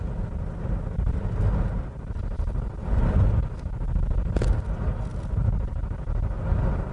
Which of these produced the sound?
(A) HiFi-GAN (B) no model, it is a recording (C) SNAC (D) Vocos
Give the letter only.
B